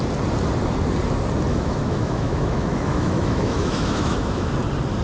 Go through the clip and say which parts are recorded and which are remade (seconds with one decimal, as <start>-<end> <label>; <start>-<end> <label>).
0.0-1.5 recorded; 1.5-4.5 remade; 4.5-5.0 recorded